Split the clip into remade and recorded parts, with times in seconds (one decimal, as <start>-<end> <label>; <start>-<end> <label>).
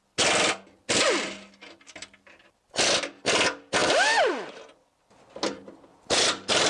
0.0-3.8 recorded; 3.8-4.6 remade; 4.6-5.9 recorded; 5.9-6.7 remade